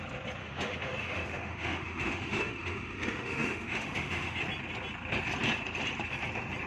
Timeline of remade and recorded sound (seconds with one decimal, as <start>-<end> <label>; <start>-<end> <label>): 0.0-0.4 recorded; 0.4-4.4 remade; 4.4-6.7 recorded